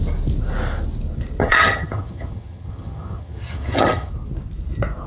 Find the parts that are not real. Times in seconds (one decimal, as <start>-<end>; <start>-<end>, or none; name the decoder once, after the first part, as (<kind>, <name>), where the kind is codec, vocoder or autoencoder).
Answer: 1.4-4.1 (vocoder, HiFi-GAN)